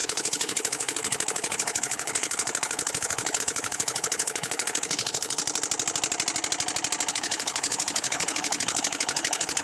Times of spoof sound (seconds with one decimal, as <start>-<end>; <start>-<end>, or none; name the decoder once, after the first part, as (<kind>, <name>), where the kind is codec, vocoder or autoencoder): 0.0-5.4 (codec, HILCodec); 7.1-9.6